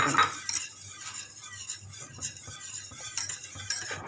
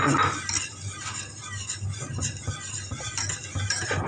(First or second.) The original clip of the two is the second